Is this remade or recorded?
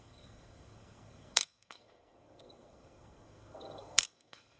remade